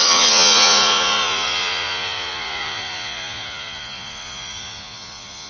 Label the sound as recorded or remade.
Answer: remade